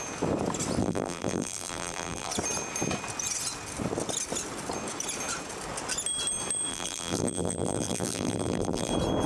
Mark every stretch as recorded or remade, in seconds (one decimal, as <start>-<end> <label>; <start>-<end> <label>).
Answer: 0.0-0.8 recorded; 0.8-2.3 remade; 2.3-6.7 recorded; 6.7-8.9 remade; 8.9-9.3 recorded